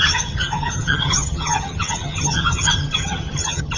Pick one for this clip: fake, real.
fake